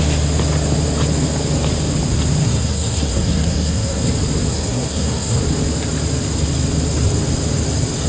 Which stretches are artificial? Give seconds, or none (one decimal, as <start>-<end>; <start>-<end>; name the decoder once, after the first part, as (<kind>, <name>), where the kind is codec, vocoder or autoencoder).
2.4-4.1 (codec, SNAC); 4.5-5.4